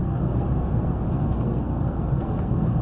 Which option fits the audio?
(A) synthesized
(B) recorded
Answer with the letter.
A